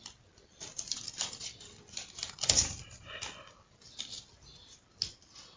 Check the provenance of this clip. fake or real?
real